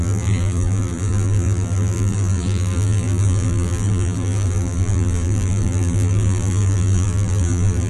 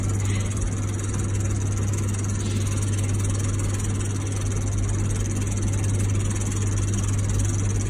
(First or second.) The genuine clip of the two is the second